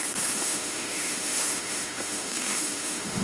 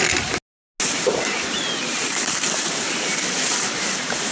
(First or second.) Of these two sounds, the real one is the second